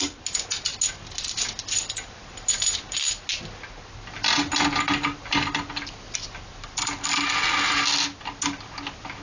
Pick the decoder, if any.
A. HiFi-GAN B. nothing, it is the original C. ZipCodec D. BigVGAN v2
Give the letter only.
B